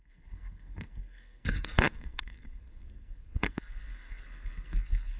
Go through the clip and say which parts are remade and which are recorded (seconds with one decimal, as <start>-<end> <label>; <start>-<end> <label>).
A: 0.0-5.2 remade

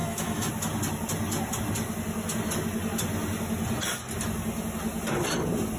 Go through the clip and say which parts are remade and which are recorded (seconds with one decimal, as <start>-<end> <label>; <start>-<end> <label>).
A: 0.0-0.5 remade; 0.5-5.8 recorded

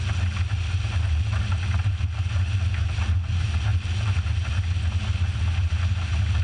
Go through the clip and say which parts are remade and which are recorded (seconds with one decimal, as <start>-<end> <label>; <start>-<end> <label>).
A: 0.0-3.7 recorded; 3.7-5.4 remade; 5.4-6.4 recorded

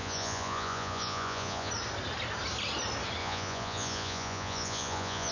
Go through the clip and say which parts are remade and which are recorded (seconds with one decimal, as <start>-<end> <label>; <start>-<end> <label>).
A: 0.0-1.7 remade; 1.7-3.2 recorded; 3.2-5.3 remade

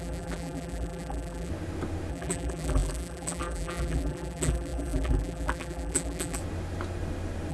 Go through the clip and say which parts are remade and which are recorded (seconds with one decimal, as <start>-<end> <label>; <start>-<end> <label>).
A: 0.0-1.5 remade; 1.5-2.1 recorded; 2.1-6.4 remade; 6.4-7.5 recorded

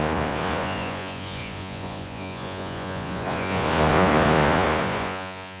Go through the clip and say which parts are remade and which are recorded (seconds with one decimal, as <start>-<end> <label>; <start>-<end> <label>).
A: 0.0-5.6 remade